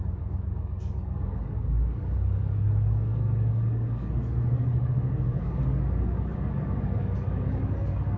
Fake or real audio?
fake